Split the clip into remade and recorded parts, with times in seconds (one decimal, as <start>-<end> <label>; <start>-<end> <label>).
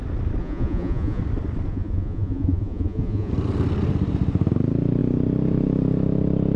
0.0-0.4 recorded; 0.4-1.2 remade; 1.2-1.7 recorded; 1.7-3.3 remade; 3.3-6.6 recorded